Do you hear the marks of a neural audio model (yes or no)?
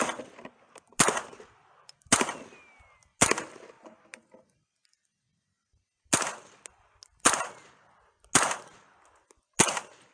no